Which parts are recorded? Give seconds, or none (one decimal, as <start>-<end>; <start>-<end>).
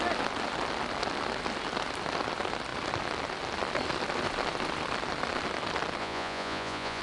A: 0.0-6.0